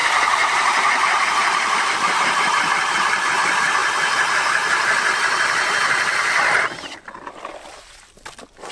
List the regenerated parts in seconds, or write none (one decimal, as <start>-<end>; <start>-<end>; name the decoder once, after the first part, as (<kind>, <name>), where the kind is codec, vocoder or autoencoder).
0.0-1.9 (vocoder, BigVGAN v2)